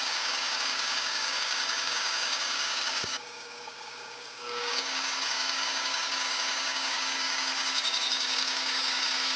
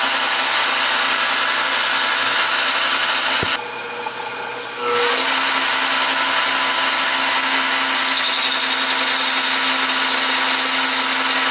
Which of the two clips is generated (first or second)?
first